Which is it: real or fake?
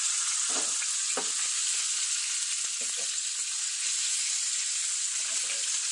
real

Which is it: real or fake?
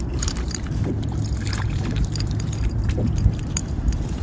fake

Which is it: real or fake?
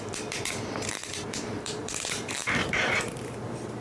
fake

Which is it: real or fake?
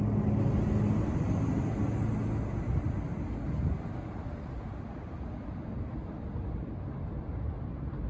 real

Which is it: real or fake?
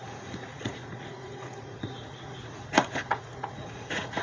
fake